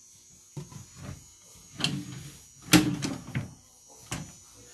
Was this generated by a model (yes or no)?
no